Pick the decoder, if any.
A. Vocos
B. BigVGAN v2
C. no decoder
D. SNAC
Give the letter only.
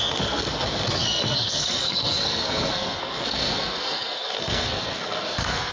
D